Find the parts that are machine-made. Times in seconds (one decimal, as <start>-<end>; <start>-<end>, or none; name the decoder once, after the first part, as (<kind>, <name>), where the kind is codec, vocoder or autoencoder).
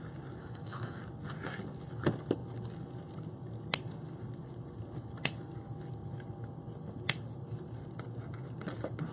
0.4-1.0 (autoencoder, DAC-VAE)